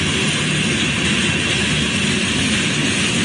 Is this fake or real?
real